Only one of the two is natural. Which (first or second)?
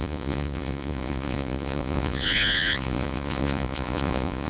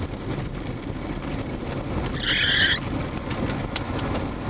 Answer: second